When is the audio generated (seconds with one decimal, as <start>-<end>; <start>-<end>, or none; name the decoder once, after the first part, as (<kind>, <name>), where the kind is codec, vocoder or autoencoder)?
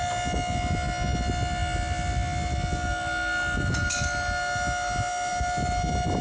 none